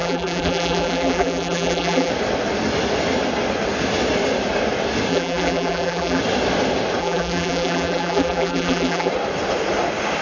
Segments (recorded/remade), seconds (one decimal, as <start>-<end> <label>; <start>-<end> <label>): 0.0-2.1 remade; 2.1-5.1 recorded; 5.1-6.2 remade; 6.2-7.0 recorded; 7.0-9.1 remade; 9.1-10.2 recorded